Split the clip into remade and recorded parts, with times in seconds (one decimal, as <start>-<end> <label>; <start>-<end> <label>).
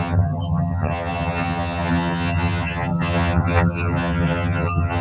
0.0-5.0 remade